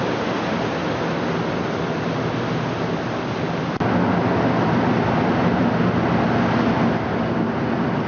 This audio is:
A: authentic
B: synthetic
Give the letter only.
A